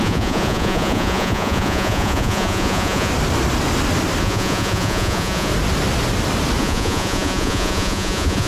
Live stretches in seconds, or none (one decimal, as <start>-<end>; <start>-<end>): 3.1-4.2; 5.5-6.6